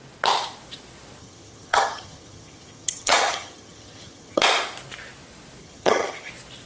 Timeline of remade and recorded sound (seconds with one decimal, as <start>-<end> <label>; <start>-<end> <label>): 0.0-1.2 recorded; 1.2-4.4 remade; 4.4-5.6 recorded; 5.6-6.3 remade; 6.3-6.7 recorded